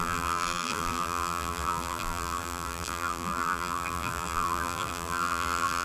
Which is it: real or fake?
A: fake